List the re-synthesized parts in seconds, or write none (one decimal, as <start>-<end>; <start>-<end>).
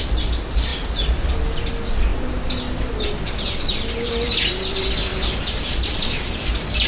none